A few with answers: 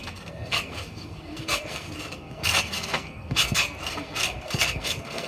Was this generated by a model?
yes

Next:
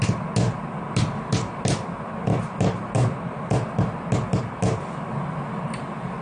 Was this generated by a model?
no